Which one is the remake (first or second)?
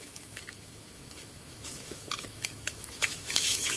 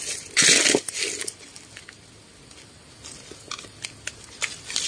first